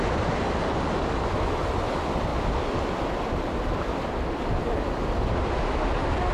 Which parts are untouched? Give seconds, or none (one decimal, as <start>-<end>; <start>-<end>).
0.0-6.3